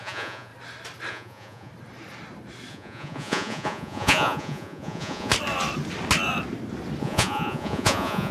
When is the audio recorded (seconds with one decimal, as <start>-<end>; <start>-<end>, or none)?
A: 0.5-1.1; 1.7-2.7; 5.3-7.0